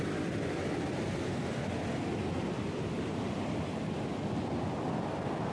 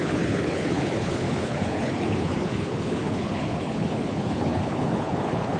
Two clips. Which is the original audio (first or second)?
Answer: first